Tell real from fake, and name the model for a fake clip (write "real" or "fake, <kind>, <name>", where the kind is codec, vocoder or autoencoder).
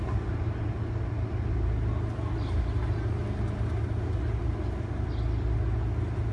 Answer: real